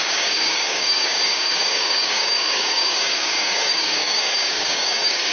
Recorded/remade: remade